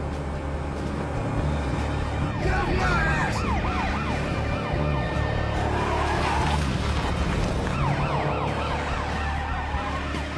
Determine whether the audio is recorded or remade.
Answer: recorded